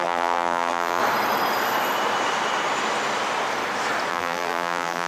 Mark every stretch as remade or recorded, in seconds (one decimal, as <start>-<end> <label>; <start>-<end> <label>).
0.0-1.0 remade; 1.0-4.1 recorded; 4.1-5.1 remade